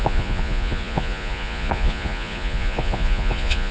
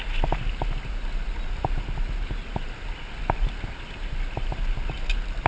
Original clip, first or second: second